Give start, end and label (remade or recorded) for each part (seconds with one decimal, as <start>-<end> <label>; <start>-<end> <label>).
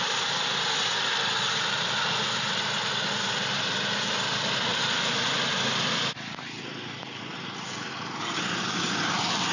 0.0-9.5 recorded